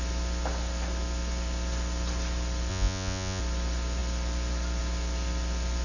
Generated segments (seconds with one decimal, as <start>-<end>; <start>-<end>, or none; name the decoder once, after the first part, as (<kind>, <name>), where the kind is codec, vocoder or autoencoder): 2.7-3.4 (vocoder, Vocos)